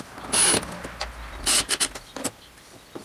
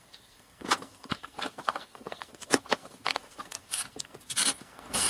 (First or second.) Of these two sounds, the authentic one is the first